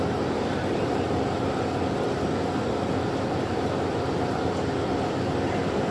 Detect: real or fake fake